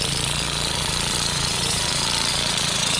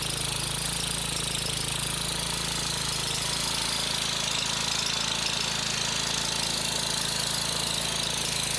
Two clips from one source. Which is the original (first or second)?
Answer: second